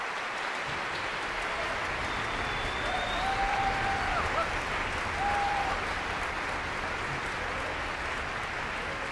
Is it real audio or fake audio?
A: real